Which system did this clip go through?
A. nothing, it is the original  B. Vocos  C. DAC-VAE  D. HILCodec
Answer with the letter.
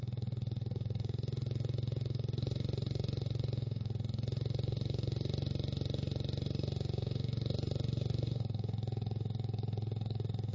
C